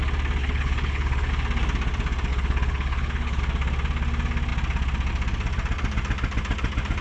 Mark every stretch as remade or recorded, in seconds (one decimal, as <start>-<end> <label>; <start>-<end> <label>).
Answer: 0.0-0.4 recorded; 0.4-1.3 remade; 1.3-2.3 recorded; 2.3-3.4 remade; 3.4-7.0 recorded